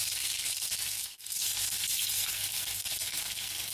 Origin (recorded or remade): remade